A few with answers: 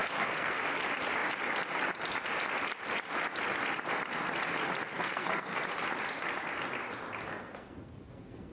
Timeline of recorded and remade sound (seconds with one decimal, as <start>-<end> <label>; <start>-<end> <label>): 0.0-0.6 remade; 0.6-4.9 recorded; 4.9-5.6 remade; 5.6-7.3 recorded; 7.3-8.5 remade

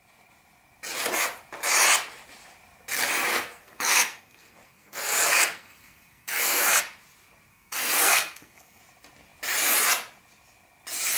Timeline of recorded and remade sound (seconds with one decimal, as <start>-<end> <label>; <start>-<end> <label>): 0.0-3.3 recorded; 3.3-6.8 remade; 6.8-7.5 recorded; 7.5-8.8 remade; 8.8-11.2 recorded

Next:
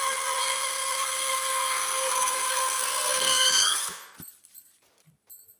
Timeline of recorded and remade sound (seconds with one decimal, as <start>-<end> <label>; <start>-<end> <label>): 0.0-0.4 recorded; 0.4-3.8 remade; 3.8-5.6 recorded

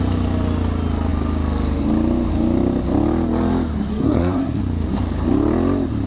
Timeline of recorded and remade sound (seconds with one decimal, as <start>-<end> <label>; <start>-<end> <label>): 0.0-3.9 recorded; 3.9-4.6 remade; 4.6-6.1 recorded

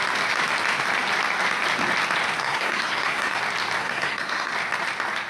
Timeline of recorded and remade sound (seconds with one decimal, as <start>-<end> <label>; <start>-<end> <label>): 0.0-2.4 recorded; 2.4-3.4 remade; 3.4-3.8 recorded; 3.8-4.5 remade; 4.5-5.3 recorded

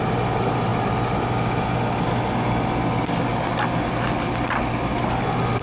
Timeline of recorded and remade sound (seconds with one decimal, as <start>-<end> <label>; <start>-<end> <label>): 0.0-5.6 recorded